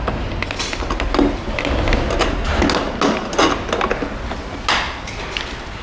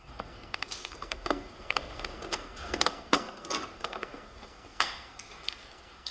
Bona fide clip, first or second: first